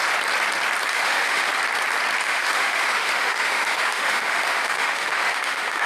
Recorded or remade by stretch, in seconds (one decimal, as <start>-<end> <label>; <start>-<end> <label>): 0.0-0.9 recorded; 0.9-1.5 remade; 1.5-2.2 recorded; 2.2-5.9 remade